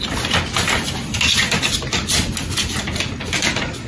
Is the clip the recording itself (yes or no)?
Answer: yes